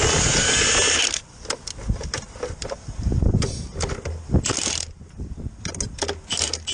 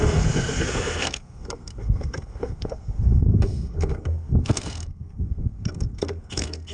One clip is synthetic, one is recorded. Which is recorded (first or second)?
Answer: first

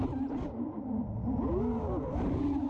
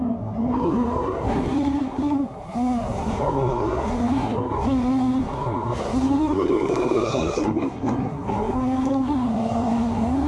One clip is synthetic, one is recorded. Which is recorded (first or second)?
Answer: first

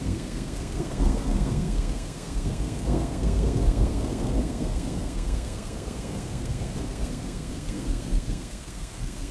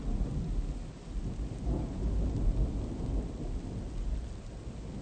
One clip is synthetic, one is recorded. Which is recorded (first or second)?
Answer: second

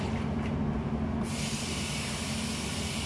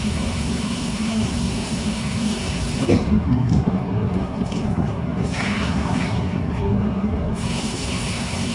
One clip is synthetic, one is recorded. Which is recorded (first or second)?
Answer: first